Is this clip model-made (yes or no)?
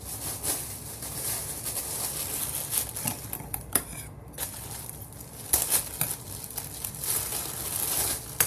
no